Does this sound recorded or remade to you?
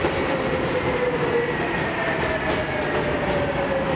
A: recorded